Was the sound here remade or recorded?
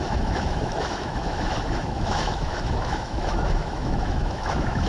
remade